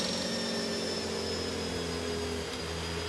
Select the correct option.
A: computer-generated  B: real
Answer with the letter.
B